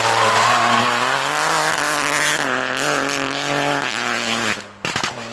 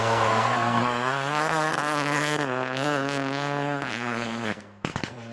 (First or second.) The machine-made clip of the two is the second